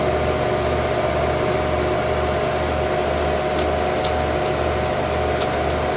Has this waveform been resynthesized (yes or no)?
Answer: no